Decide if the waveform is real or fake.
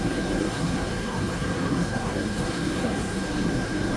fake